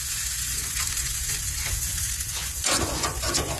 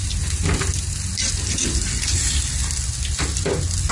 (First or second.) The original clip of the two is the second